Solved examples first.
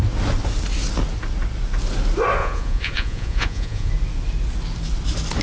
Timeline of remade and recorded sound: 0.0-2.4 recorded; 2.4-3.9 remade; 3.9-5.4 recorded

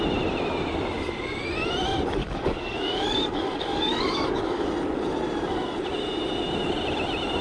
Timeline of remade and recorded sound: 0.0-2.2 recorded; 2.2-4.7 remade; 4.7-7.4 recorded

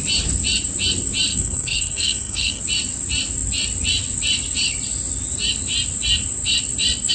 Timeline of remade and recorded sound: 0.0-1.3 recorded; 1.3-2.6 remade; 2.6-7.1 recorded

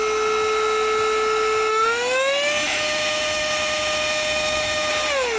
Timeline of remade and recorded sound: 0.0-1.7 recorded; 1.7-4.9 remade; 4.9-5.4 recorded